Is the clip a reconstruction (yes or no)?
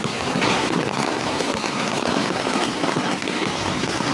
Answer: yes